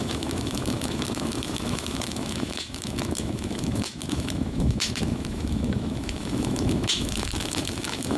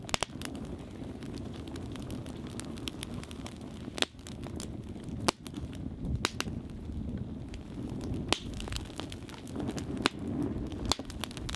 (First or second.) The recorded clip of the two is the second